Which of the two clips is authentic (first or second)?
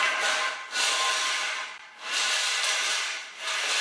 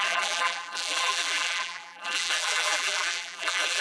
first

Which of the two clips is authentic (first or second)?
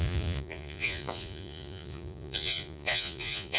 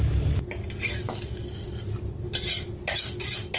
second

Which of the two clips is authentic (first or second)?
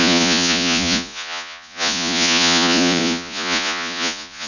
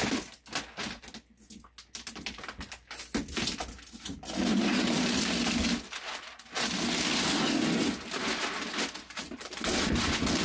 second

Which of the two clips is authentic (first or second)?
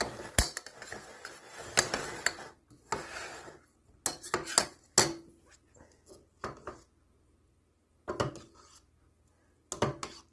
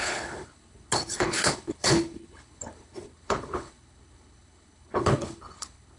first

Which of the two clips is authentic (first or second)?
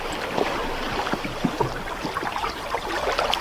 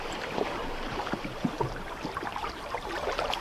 first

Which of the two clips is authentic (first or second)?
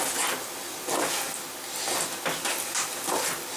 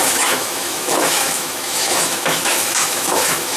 first